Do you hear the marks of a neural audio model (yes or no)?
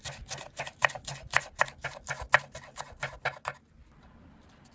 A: no